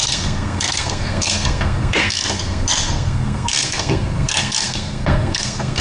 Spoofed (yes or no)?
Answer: yes